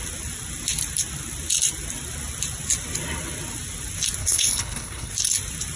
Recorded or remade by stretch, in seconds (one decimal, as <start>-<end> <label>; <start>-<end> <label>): 0.0-4.2 recorded; 4.2-5.1 remade; 5.1-5.8 recorded